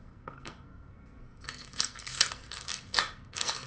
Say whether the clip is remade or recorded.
remade